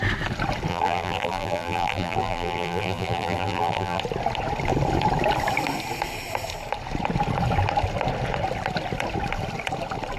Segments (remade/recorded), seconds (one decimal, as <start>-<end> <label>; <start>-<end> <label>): 0.0-0.7 recorded; 0.7-4.0 remade; 4.0-10.2 recorded